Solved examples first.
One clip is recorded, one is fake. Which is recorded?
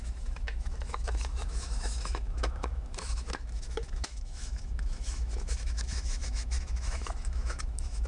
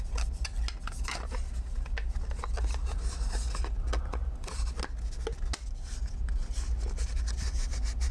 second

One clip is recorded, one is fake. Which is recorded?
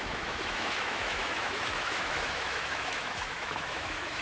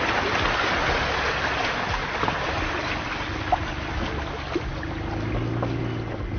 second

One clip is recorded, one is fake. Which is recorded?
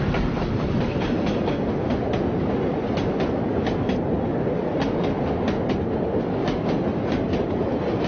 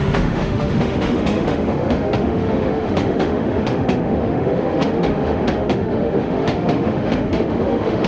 first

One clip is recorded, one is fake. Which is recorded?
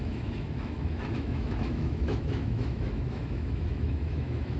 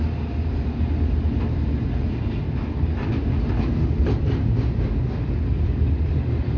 second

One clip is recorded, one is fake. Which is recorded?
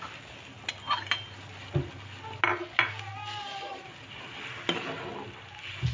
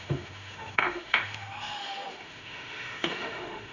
first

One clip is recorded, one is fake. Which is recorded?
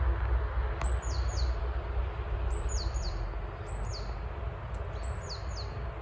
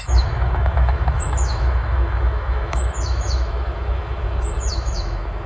first